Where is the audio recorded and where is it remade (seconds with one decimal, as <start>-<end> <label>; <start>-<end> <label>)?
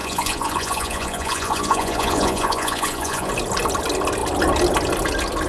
0.0-3.3 remade; 3.3-5.5 recorded